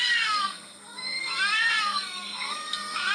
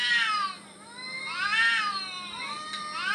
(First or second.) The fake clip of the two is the first